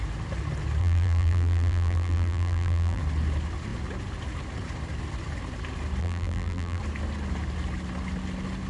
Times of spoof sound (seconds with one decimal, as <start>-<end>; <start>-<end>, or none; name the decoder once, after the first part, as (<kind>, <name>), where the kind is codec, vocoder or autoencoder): 0.8-3.0 (vocoder, BigVGAN v2); 6.0-6.8